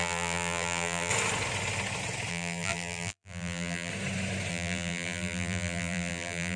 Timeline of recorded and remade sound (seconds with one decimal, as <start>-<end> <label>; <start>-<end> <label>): 0.0-1.1 remade; 1.1-2.3 recorded; 2.3-3.9 remade; 3.9-4.5 recorded; 4.5-6.6 remade